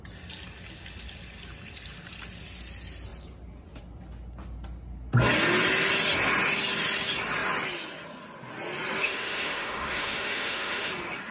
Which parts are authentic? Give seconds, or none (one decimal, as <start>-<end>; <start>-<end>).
0.0-9.0; 10.9-11.3